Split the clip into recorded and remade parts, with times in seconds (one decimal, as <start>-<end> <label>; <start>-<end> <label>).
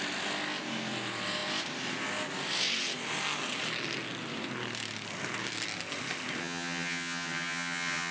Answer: 0.0-6.4 recorded; 6.4-8.1 remade